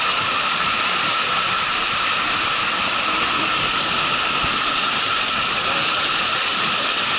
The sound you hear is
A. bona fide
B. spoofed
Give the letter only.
B